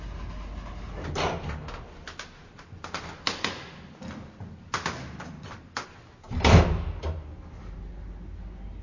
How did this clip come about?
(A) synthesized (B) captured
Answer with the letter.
B